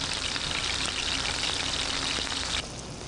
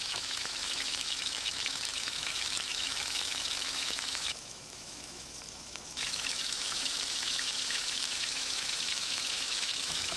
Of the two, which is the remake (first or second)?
second